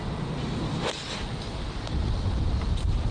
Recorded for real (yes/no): no